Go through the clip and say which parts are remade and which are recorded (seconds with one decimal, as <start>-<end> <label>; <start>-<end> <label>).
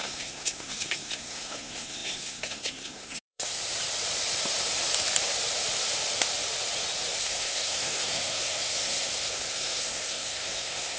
0.0-3.6 remade; 3.6-7.2 recorded; 7.2-11.0 remade